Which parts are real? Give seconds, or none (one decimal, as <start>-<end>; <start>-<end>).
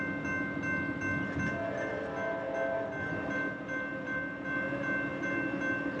0.0-6.0